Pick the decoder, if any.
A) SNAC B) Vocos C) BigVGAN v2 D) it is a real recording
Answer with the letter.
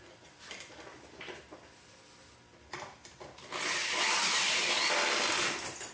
D